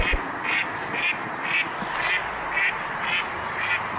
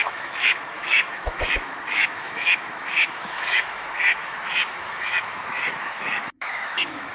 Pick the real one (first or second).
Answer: first